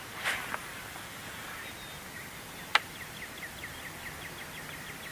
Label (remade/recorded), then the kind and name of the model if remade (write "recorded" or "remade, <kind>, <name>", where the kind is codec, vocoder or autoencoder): recorded